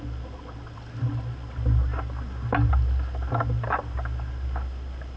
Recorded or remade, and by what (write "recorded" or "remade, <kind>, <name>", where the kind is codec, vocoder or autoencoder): recorded